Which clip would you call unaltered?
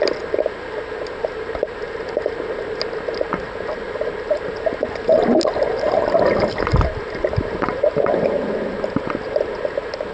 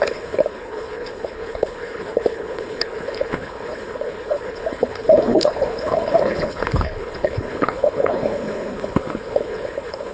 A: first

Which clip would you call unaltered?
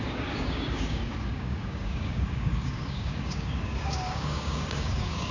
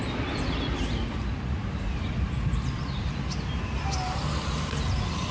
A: second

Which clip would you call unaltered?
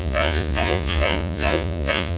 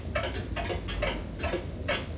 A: second